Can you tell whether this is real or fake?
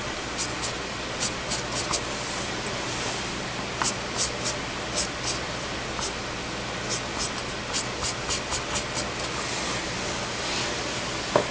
real